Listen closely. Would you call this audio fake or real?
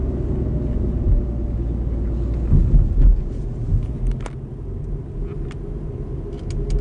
real